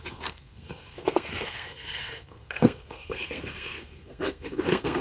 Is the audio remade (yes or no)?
yes